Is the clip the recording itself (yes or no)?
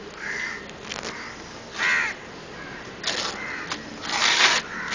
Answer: yes